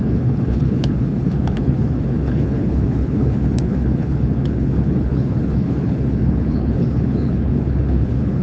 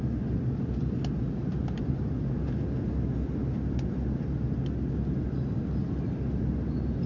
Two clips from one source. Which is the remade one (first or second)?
first